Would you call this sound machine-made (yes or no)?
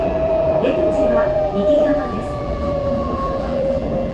yes